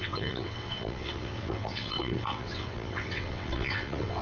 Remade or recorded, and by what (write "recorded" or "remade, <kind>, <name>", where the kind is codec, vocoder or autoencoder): remade, vocoder, WaveNeXt